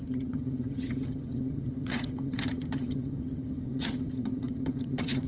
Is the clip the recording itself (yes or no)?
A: no